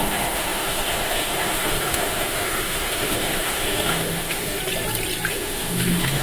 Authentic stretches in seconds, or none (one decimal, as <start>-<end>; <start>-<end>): 4.6-5.3